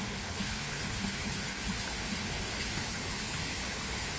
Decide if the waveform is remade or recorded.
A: remade